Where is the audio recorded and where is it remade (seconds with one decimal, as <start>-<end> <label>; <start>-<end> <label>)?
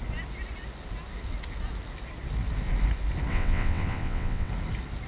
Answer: 0.0-3.3 recorded; 3.3-4.5 remade; 4.5-5.1 recorded